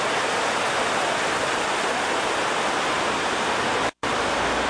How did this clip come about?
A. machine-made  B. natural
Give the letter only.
A